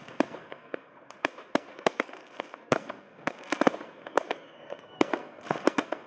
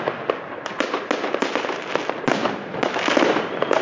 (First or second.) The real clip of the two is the second